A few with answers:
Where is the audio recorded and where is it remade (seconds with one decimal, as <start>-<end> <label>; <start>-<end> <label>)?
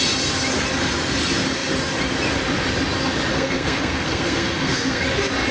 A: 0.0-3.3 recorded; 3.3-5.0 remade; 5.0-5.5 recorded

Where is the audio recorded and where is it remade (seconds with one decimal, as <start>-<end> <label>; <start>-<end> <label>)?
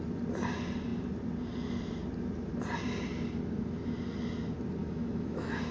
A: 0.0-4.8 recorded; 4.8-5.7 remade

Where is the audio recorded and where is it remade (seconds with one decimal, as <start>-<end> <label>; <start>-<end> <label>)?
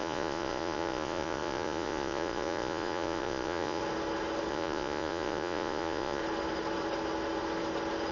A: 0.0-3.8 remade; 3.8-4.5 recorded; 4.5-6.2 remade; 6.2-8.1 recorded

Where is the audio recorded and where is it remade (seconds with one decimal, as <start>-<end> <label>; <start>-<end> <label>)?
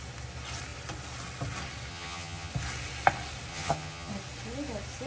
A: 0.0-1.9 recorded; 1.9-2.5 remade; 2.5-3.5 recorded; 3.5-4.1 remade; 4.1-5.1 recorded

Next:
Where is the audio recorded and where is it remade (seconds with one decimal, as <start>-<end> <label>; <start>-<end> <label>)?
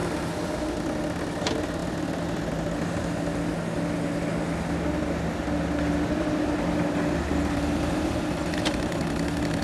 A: 0.0-9.6 recorded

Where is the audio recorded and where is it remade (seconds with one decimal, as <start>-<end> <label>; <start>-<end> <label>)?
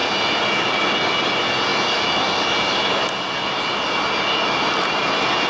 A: 0.0-5.5 recorded